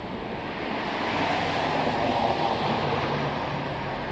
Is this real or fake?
real